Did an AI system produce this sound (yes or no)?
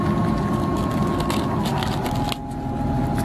no